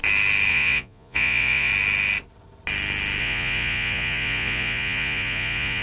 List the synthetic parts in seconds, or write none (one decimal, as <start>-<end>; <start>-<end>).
0.5-1.7; 3.2-5.8